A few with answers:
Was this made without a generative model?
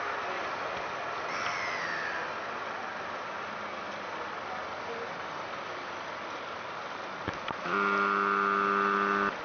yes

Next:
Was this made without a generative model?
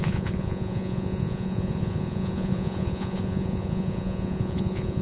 no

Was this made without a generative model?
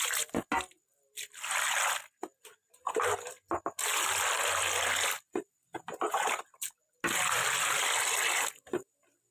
yes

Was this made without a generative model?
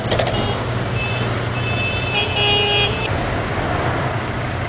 yes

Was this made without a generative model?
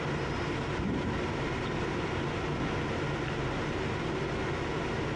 yes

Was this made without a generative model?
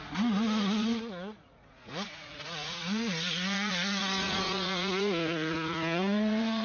no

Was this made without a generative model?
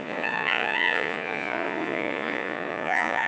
no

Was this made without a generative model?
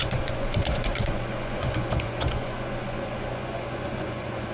no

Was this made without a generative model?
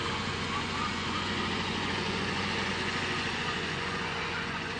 no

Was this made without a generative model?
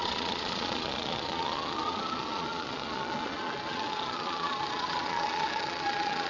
no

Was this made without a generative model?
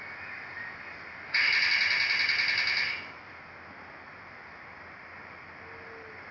yes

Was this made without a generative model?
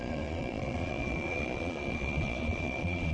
no